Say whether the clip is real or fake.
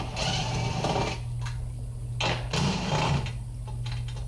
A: real